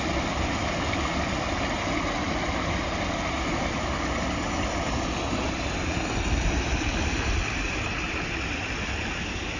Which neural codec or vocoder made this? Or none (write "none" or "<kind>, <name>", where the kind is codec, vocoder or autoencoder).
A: none